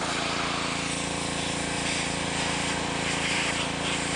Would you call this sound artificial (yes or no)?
yes